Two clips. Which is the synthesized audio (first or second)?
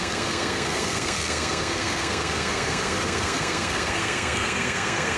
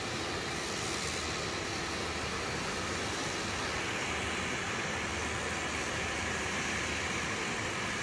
first